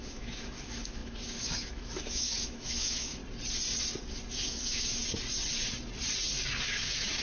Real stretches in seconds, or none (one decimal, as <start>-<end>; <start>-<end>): 3.2-4.4; 5.0-6.7